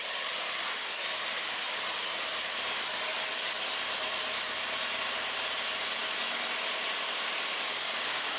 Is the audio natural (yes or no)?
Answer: yes